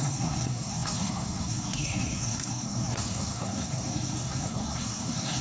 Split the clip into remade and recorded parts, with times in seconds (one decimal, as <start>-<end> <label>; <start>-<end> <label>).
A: 0.0-5.4 remade